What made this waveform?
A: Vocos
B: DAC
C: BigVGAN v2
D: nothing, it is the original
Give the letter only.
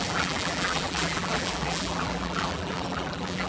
C